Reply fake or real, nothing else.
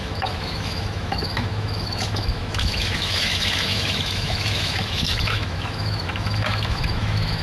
fake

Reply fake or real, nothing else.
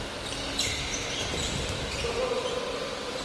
real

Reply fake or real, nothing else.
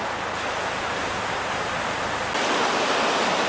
real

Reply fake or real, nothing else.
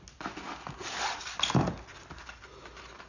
real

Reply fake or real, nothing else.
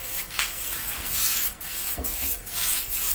fake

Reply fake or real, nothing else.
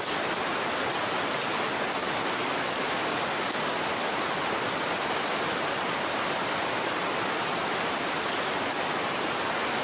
real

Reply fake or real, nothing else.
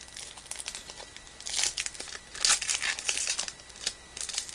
real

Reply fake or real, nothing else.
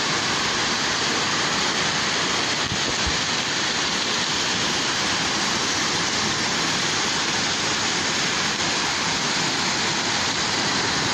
fake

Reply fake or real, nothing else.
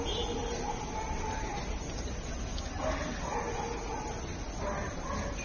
real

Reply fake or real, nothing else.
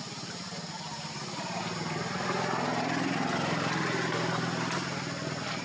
fake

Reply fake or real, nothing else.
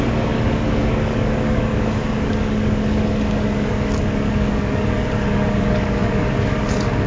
fake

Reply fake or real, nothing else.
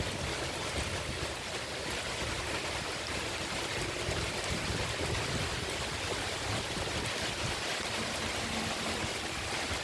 real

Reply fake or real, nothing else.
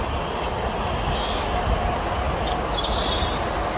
real